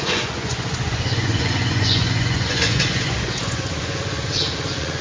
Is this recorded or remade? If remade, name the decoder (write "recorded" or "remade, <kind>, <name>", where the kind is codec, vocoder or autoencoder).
remade, vocoder, Vocos